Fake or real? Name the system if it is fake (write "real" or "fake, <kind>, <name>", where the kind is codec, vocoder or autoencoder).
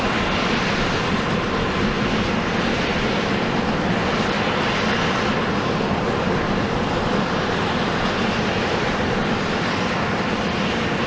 real